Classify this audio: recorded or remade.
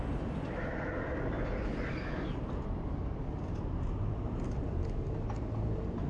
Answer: recorded